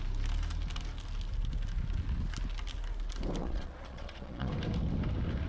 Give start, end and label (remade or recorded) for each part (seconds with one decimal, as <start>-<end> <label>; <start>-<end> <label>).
0.0-3.4 recorded; 3.4-4.5 remade; 4.5-5.5 recorded